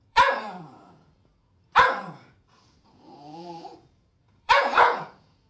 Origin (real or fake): fake